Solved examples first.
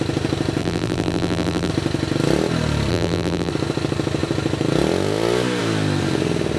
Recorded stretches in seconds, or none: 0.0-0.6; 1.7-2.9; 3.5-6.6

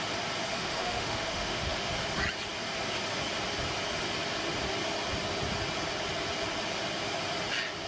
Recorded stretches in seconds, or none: 0.0-0.5; 1.9-7.9

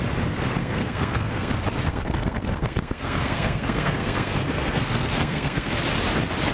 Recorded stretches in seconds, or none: 0.0-0.6; 1.5-1.9; 5.8-6.5

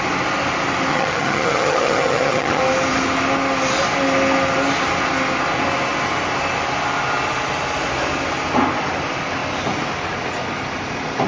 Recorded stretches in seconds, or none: 0.0-0.9; 2.6-11.3